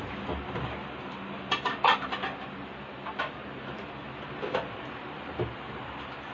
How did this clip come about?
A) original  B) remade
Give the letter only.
A